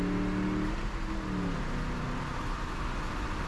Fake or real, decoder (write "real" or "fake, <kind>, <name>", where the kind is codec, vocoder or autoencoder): real